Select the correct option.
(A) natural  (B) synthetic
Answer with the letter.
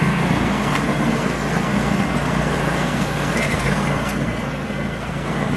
B